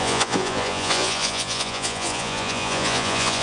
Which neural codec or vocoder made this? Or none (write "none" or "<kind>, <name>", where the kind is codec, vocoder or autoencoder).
vocoder, Vocos